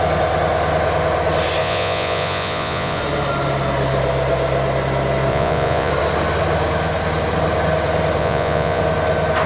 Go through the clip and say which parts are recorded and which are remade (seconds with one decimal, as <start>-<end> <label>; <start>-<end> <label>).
0.0-1.6 recorded; 1.6-3.0 remade; 3.0-5.3 recorded; 5.3-5.9 remade; 5.9-8.2 recorded; 8.2-8.8 remade; 8.8-9.5 recorded